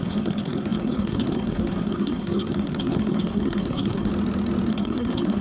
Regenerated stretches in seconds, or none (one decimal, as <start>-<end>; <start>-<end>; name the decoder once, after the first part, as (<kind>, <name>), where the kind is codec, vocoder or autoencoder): 0.0-4.1 (codec, SNAC); 4.7-5.4